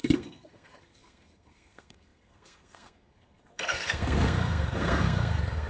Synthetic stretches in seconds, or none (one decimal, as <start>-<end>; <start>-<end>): 0.0-5.7